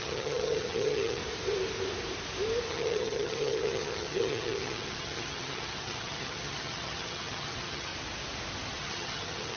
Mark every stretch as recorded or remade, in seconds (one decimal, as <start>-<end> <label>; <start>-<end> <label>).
0.0-1.2 remade; 1.2-2.7 recorded; 2.7-7.9 remade; 7.9-8.8 recorded; 8.8-9.6 remade